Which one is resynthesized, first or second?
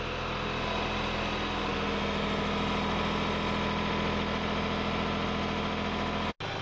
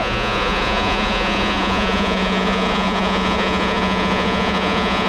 second